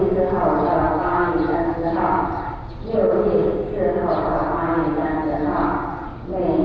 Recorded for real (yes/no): yes